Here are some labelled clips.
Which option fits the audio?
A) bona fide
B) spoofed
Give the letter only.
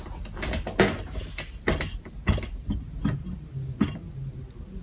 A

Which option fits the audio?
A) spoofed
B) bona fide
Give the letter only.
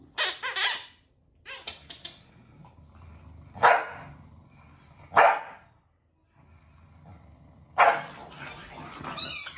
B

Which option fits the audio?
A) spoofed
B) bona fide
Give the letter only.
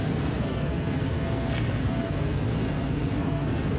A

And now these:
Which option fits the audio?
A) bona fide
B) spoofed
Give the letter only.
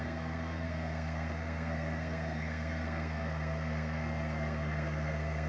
B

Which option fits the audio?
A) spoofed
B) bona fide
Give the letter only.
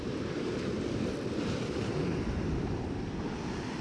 B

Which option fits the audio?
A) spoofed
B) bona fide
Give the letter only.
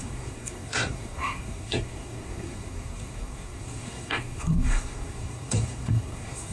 A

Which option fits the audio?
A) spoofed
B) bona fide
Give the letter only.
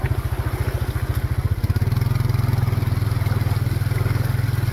B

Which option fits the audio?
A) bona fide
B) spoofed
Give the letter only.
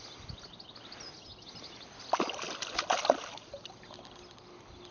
A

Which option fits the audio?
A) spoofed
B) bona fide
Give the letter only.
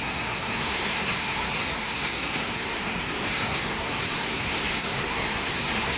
A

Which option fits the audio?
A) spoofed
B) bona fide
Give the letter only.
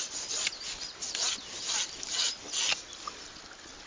B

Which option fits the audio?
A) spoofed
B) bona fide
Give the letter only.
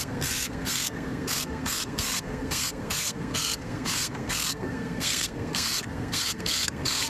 A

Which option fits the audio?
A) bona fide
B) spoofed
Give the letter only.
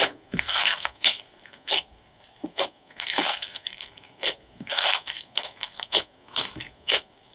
B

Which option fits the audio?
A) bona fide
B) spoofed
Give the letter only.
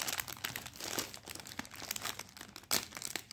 A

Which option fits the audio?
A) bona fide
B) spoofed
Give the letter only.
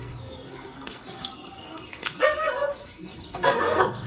B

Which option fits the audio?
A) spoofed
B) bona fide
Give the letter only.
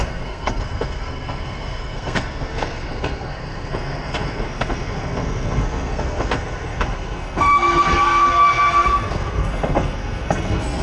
A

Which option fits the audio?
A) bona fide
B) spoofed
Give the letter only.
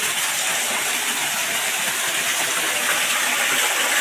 A